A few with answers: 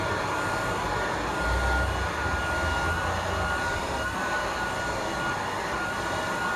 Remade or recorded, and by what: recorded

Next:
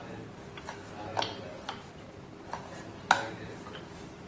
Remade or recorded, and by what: recorded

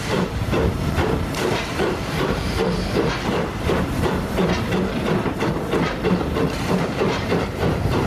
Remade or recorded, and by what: remade, vocoder, BigVGAN v2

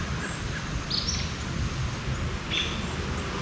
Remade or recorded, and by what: recorded